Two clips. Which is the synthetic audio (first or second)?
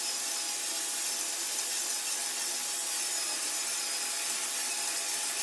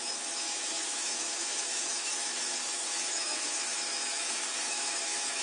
second